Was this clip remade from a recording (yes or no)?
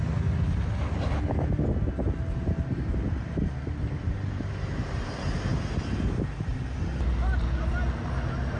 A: no